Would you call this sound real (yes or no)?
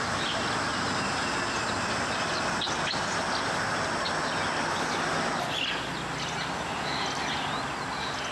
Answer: yes